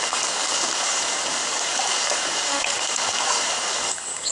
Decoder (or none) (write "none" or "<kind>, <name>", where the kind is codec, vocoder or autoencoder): codec, DAC